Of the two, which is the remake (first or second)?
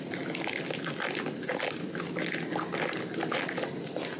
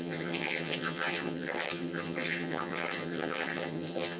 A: second